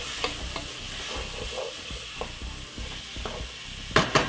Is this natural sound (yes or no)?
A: yes